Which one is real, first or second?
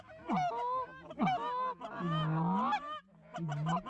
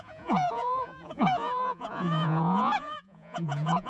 first